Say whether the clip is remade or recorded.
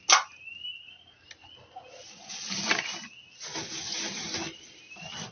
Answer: recorded